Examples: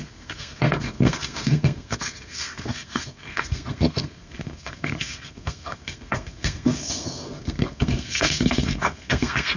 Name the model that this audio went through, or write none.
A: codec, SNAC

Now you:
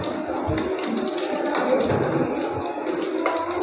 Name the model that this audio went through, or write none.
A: none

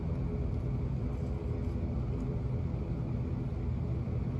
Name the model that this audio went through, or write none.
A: none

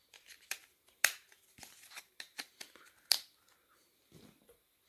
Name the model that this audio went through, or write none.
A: none